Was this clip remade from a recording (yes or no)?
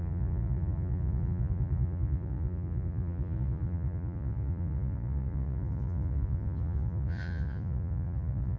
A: yes